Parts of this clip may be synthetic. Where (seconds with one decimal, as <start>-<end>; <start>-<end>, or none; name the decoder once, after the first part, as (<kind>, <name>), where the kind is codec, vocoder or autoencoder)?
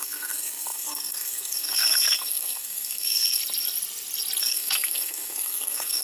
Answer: 0.0-3.4 (codec, SNAC); 4.4-6.0